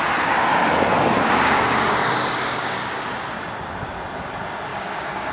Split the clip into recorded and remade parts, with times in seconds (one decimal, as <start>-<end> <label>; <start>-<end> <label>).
0.0-1.2 recorded; 1.2-3.0 remade; 3.0-4.7 recorded; 4.7-5.3 remade